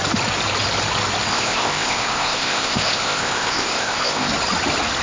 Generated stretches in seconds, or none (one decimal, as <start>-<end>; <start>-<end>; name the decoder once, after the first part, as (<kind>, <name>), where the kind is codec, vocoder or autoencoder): 1.3-4.3 (codec, ZipCodec)

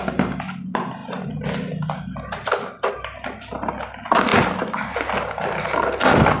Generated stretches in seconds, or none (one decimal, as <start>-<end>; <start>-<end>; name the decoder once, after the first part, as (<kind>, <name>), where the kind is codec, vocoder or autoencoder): 4.3-5.1 (vocoder, BigVGAN v2)